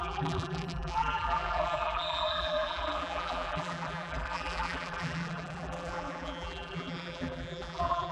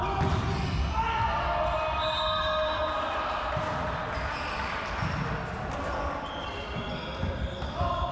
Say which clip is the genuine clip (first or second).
second